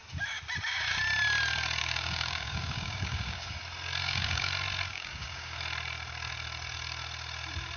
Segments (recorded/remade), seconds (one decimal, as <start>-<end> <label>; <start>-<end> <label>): 0.0-1.8 recorded; 1.8-3.6 remade; 3.6-4.0 recorded; 4.0-4.5 remade; 4.5-4.9 recorded; 4.9-5.6 remade; 5.6-7.8 recorded